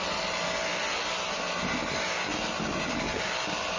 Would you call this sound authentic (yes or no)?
yes